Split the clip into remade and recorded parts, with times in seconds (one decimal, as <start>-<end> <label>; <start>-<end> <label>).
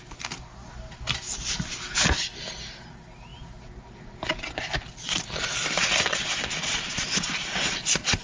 0.0-8.2 recorded